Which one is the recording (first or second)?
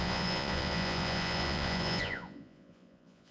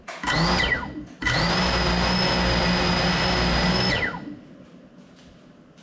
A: second